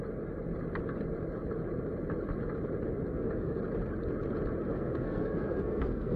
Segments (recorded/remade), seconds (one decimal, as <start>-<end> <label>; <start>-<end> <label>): 0.0-3.1 recorded; 3.1-3.6 remade; 3.6-4.7 recorded; 4.7-6.2 remade